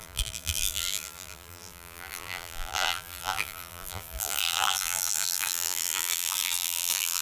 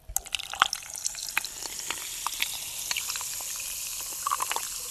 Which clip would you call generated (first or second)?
first